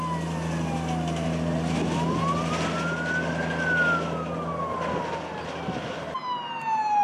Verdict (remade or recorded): recorded